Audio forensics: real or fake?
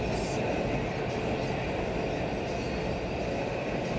real